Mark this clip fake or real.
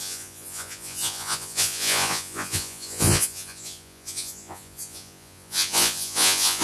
fake